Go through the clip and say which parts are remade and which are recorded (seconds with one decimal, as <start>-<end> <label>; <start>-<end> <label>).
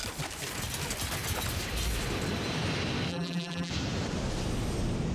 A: 0.0-3.1 recorded; 3.1-3.7 remade; 3.7-5.1 recorded